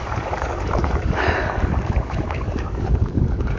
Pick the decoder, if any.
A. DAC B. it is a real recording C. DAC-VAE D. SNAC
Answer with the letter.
A